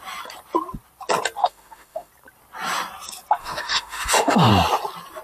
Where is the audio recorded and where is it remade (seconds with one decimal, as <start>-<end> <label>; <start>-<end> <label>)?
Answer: 0.0-1.4 recorded; 1.4-2.1 remade; 2.1-3.4 recorded; 3.4-4.5 remade; 4.5-5.2 recorded